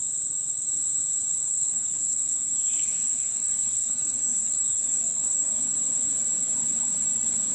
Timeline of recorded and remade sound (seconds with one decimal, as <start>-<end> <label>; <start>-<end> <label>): 0.0-1.5 recorded; 1.5-5.6 remade; 5.6-7.5 recorded